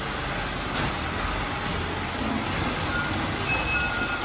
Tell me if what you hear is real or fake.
real